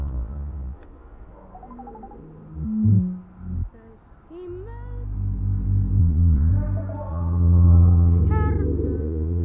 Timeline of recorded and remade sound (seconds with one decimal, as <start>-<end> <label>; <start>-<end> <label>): 0.0-1.3 remade; 1.3-6.0 recorded; 6.0-6.5 remade; 6.5-7.1 recorded; 7.1-8.2 remade; 8.2-9.0 recorded; 9.0-9.4 remade